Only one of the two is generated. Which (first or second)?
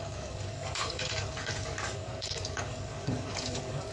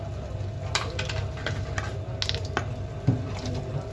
first